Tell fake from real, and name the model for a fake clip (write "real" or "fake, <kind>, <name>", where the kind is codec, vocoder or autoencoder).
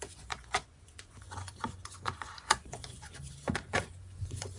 fake, vocoder, Vocos